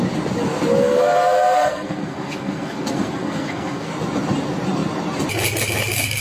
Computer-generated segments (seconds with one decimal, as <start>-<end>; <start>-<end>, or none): 0.8-3.9